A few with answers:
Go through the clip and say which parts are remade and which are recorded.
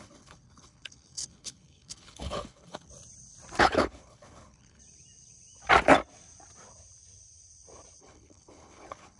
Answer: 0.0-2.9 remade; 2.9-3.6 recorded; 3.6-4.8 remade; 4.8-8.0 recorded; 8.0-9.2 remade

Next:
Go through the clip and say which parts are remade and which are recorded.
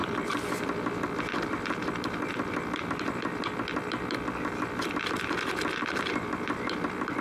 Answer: 0.0-7.2 remade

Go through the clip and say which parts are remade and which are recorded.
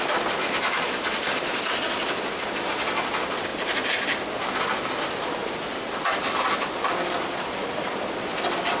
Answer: 0.0-8.8 recorded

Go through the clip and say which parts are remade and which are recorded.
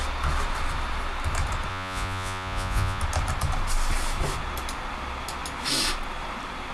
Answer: 0.0-1.7 recorded; 1.7-3.0 remade; 3.0-6.7 recorded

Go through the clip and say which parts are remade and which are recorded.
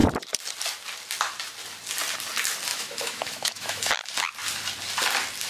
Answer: 0.0-2.7 recorded; 2.7-3.9 remade; 3.9-5.5 recorded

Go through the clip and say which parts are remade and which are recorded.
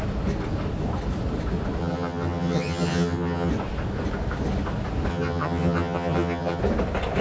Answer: 0.0-1.8 recorded; 1.8-3.5 remade; 3.5-5.1 recorded; 5.1-6.6 remade; 6.6-7.2 recorded